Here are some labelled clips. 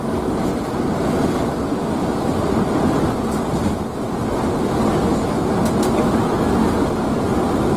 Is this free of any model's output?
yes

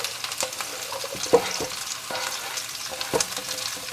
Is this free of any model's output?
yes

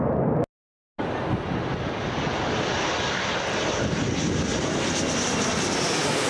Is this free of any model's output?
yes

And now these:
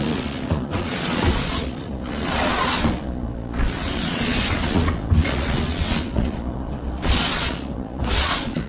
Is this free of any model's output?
no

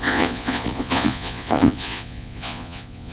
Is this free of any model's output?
no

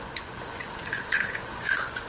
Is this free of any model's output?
no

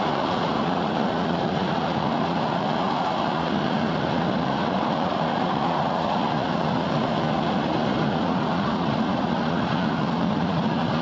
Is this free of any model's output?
no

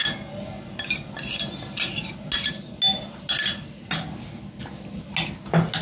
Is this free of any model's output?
yes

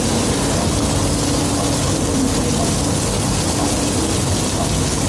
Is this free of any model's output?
yes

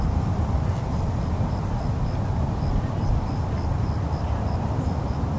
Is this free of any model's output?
yes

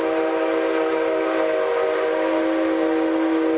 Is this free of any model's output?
yes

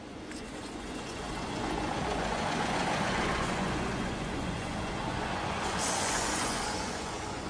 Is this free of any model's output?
no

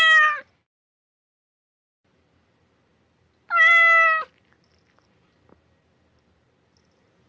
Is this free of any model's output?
yes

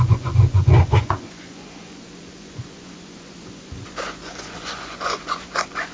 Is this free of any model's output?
no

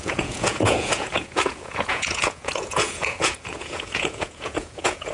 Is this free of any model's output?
no